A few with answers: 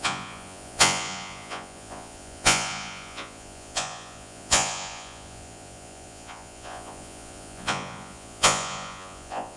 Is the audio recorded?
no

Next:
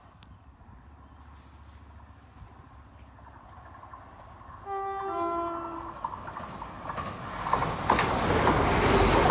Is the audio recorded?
yes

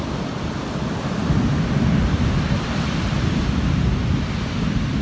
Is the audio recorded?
yes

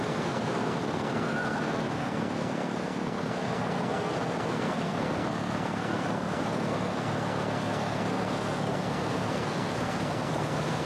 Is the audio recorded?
no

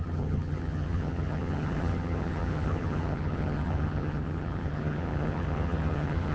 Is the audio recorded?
no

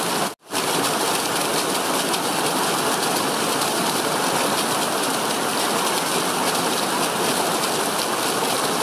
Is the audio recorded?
yes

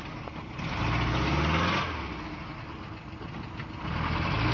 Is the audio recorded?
yes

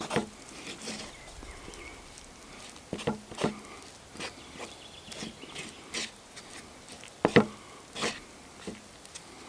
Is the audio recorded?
yes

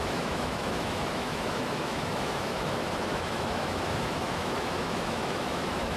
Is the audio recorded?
no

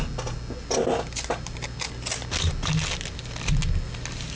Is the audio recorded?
yes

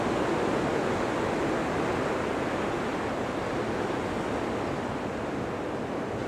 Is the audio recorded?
yes